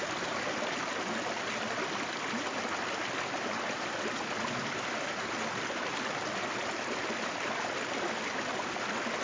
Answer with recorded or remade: recorded